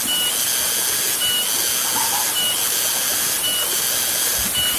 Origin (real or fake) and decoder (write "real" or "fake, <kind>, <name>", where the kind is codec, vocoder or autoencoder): real